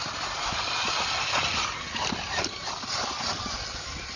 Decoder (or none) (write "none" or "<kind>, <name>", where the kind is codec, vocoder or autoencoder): none